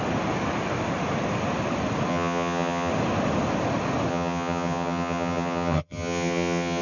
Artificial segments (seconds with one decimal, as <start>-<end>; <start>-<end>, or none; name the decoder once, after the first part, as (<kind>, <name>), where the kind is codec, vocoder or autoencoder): 2.1-2.9 (vocoder, HiFi-GAN); 4.1-6.8